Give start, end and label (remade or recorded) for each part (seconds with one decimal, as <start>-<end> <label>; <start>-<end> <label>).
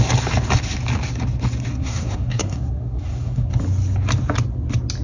0.0-1.7 recorded; 1.7-3.5 remade; 3.5-5.0 recorded